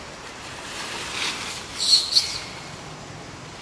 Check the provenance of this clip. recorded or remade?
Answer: remade